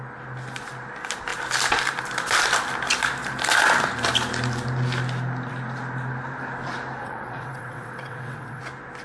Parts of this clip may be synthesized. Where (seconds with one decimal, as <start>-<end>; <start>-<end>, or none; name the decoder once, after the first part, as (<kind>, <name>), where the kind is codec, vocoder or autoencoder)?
7.0-8.6 (vocoder, WaveNeXt)